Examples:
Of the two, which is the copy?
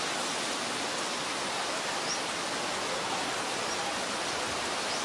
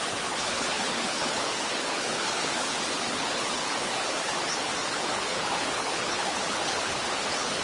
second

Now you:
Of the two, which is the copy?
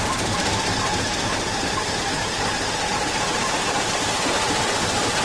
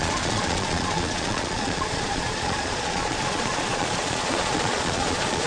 second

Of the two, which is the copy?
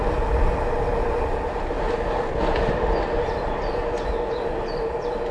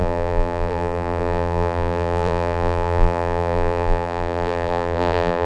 second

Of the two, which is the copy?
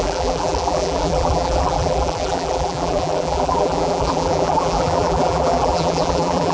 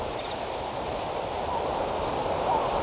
first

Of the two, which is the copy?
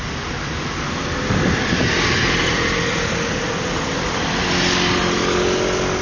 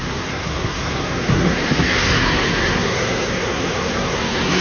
second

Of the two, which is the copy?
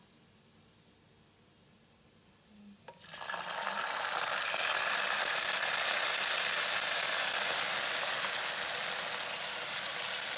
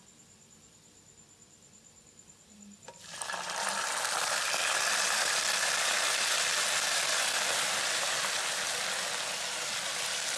second